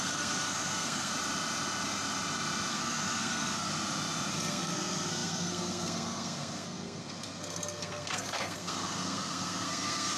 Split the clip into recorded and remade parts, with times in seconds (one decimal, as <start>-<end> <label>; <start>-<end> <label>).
0.0-1.1 remade; 1.1-2.7 recorded; 2.7-3.7 remade; 3.7-4.3 recorded; 4.3-10.2 remade